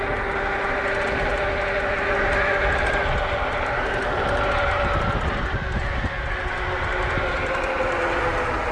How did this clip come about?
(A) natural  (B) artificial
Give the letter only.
A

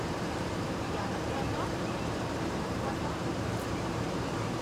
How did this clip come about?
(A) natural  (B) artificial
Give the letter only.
B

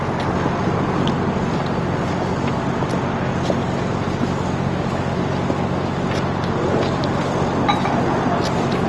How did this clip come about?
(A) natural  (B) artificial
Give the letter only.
A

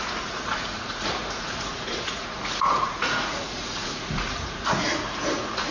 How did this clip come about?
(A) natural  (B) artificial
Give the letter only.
B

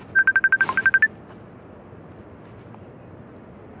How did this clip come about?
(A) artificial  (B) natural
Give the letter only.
B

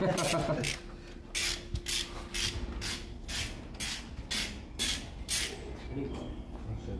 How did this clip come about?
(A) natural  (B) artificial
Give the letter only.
A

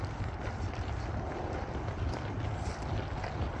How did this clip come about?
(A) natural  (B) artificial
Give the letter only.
A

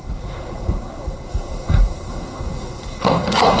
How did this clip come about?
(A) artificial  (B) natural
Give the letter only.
A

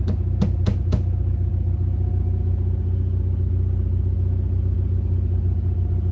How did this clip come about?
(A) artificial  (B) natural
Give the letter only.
B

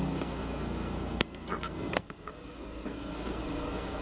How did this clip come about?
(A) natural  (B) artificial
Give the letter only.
B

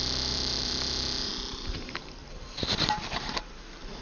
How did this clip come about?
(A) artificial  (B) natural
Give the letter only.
A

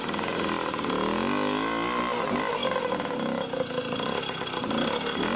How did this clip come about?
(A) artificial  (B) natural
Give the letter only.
B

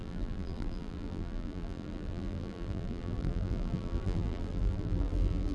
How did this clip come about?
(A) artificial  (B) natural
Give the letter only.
A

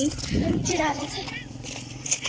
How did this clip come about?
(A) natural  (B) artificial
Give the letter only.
B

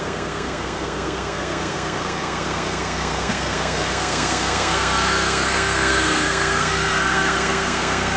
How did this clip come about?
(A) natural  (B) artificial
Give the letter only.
B